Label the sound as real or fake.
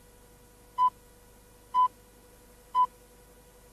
real